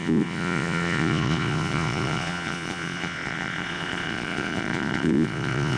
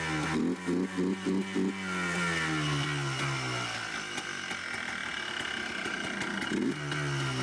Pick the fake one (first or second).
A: first